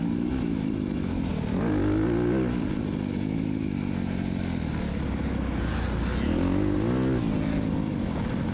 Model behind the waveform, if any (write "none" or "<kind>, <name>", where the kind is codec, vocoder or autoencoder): none